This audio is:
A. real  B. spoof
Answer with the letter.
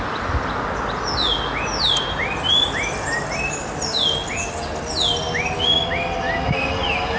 A